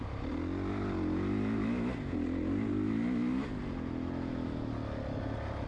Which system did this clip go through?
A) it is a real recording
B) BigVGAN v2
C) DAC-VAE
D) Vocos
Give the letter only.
A